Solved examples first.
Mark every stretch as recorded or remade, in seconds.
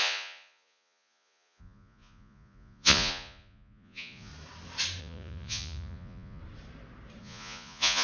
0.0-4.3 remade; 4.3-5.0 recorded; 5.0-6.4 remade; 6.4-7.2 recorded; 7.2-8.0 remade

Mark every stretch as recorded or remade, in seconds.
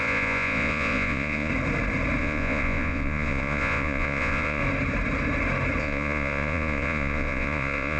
0.0-1.5 remade; 1.5-2.2 recorded; 2.2-4.6 remade; 4.6-5.8 recorded; 5.8-8.0 remade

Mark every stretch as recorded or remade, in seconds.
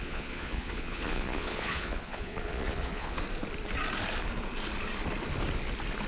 0.0-3.2 remade; 3.2-6.1 recorded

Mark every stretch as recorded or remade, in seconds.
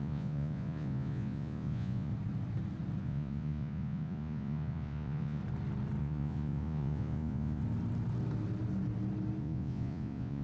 0.0-2.1 remade; 2.1-3.0 recorded; 3.0-5.4 remade; 5.4-6.0 recorded; 6.0-7.6 remade; 7.6-9.4 recorded; 9.4-10.4 remade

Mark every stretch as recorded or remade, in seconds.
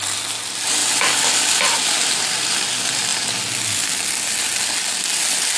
0.0-5.6 recorded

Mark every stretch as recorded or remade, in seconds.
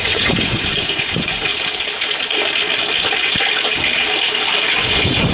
0.0-1.5 remade; 1.5-4.7 recorded; 4.7-5.3 remade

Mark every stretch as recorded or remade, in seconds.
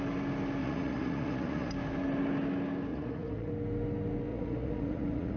0.0-0.6 recorded; 0.6-1.7 remade; 1.7-2.9 recorded; 2.9-3.5 remade; 3.5-4.3 recorded; 4.3-5.4 remade